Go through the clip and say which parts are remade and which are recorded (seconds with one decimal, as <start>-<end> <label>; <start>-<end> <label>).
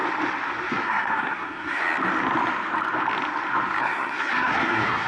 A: 0.0-0.7 recorded; 0.7-1.8 remade; 1.8-3.8 recorded; 3.8-5.1 remade